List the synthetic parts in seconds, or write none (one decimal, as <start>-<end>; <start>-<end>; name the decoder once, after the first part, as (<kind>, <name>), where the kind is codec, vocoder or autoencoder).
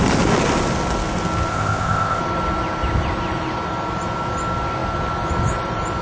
1.5-2.2 (codec, ZipCodec)